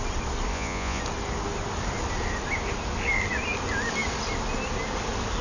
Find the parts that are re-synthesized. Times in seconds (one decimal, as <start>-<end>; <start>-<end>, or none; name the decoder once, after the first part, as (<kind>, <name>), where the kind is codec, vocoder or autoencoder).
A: 0.5-1.0 (vocoder, Vocos)